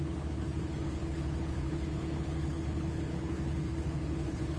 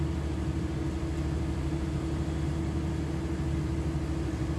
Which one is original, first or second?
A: second